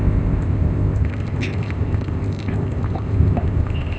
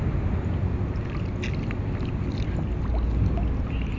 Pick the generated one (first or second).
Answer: first